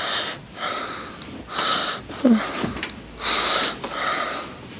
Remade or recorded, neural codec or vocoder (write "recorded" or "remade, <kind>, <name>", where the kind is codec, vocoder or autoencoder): recorded